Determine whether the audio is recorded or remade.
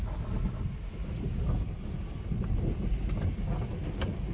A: recorded